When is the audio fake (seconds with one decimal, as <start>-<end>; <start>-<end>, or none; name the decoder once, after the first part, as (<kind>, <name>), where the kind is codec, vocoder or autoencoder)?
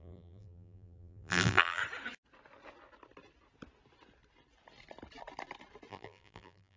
0.0-1.8 (vocoder, BigVGAN v2); 5.9-6.8